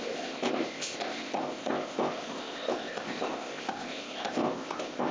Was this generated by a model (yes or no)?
yes